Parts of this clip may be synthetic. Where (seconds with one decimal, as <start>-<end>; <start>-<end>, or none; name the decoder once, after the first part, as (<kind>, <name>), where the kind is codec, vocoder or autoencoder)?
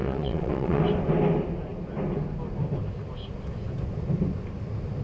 0.0-0.8 (vocoder, WaveNeXt)